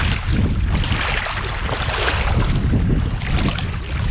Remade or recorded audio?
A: recorded